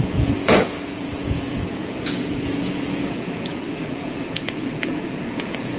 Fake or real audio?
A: fake